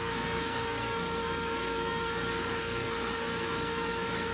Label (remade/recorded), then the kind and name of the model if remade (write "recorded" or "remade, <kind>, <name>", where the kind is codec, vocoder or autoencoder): remade, codec, SNAC